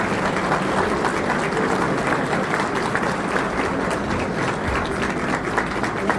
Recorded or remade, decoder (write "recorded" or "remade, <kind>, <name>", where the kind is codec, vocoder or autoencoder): recorded